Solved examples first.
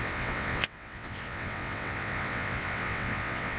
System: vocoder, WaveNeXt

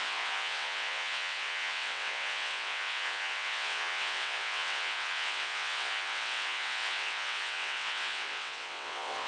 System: vocoder, WaveNeXt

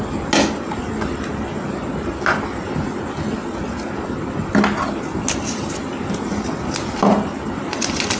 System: none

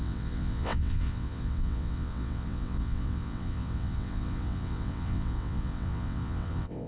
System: vocoder, WaveNeXt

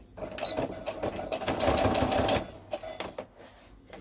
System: none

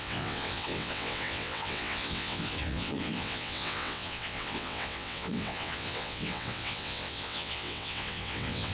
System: vocoder, WaveNeXt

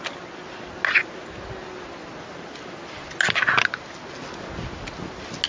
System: none